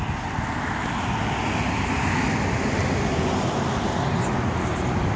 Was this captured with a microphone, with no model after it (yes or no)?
yes